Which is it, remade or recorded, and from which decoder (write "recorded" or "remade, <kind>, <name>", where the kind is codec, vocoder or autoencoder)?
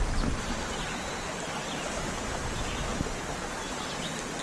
recorded